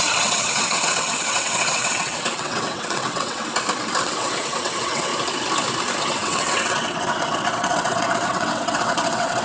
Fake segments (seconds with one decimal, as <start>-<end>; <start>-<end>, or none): 0.0-3.4; 4.0-5.1; 6.0-9.4